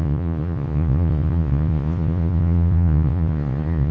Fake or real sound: fake